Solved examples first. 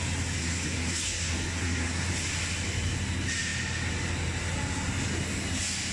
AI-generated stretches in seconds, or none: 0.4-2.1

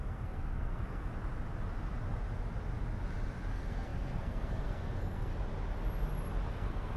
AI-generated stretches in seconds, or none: 0.0-1.1; 3.5-5.3; 6.5-7.0